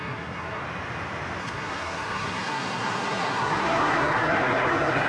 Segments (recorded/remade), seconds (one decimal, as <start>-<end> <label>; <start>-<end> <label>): 0.0-0.6 remade; 0.6-1.4 recorded; 1.4-5.1 remade